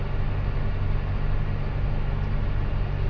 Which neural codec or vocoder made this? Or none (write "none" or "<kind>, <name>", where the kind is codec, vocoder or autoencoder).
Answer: none